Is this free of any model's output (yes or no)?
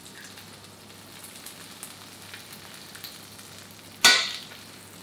yes